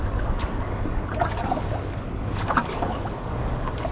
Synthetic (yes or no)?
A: yes